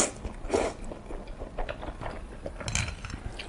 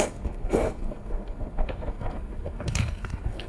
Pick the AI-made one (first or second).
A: second